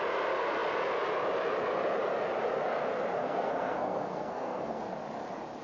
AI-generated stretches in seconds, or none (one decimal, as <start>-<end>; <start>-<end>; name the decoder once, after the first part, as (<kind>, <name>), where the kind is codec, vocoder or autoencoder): 3.2-4.8 (codec, SNAC)